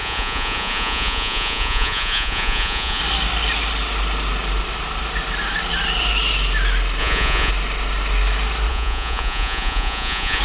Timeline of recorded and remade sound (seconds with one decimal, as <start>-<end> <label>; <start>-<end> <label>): 0.0-3.0 remade; 3.0-7.0 recorded; 7.0-7.5 remade; 7.5-8.7 recorded; 8.7-10.4 remade